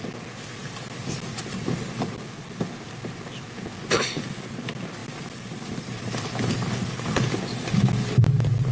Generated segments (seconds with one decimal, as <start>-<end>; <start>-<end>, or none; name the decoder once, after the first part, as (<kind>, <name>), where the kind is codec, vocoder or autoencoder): none